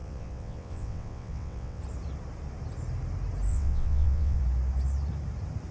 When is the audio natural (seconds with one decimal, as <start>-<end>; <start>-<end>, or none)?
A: 1.8-3.5; 4.4-5.7